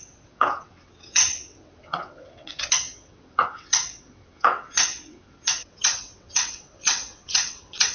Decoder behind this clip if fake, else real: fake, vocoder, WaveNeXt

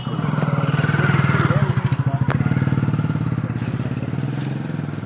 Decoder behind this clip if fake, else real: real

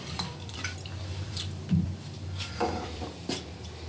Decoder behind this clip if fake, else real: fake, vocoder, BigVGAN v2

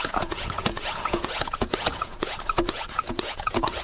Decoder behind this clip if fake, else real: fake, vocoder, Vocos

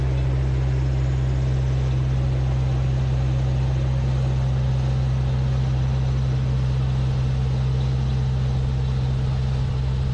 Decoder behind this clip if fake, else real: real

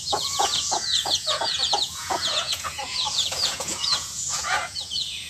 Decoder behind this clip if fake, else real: fake, vocoder, Vocos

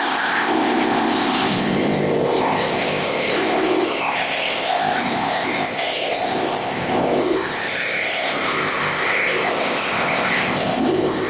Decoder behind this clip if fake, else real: fake, codec, ZipCodec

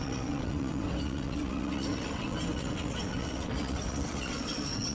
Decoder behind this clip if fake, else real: fake, vocoder, WaveNeXt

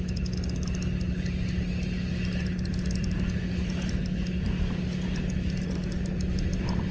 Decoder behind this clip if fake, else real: real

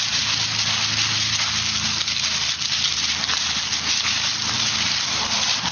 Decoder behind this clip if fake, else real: real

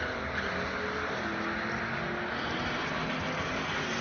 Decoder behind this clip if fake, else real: real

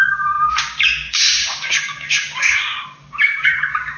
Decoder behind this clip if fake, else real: fake, codec, DAC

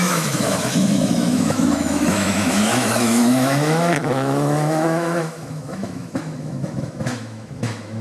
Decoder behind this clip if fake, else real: fake, autoencoder, DAC-VAE